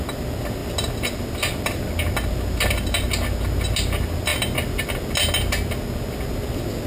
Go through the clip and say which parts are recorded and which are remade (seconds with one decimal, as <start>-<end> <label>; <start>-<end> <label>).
0.0-6.9 recorded